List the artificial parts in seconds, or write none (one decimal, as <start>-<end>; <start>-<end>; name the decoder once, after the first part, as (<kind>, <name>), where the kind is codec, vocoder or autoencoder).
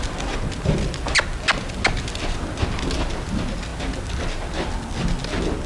none